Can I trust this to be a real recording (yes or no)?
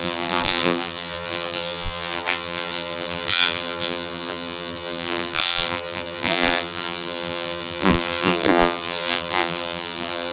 no